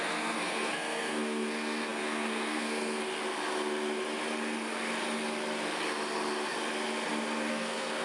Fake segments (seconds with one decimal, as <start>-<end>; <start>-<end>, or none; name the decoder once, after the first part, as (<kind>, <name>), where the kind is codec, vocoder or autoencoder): 0.0-3.0 (codec, SNAC); 7.5-8.0